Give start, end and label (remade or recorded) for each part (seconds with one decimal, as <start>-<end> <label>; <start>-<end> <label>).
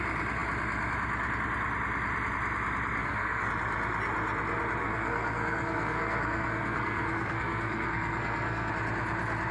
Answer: 0.0-3.0 recorded; 3.0-3.5 remade; 3.5-4.8 recorded; 4.8-8.7 remade; 8.7-9.5 recorded